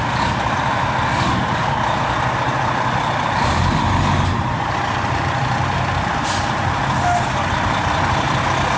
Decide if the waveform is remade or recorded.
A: recorded